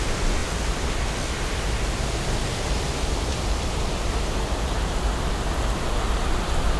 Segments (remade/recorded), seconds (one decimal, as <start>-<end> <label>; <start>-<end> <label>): 0.0-6.8 recorded